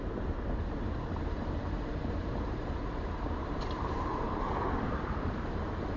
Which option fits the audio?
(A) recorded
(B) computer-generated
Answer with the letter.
B